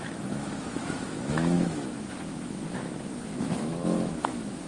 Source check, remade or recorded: remade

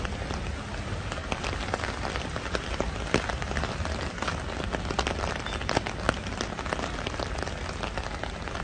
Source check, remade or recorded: recorded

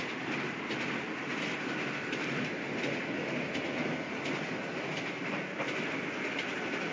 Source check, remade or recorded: recorded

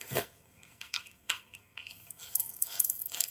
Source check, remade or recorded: remade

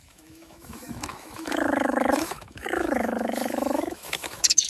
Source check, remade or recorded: remade